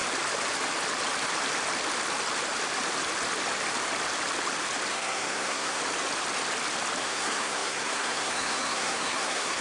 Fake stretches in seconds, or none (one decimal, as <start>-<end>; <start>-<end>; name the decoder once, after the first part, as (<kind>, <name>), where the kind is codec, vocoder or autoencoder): 4.9-5.8 (codec, SNAC); 7.0-9.6